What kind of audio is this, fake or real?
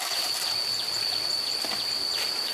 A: real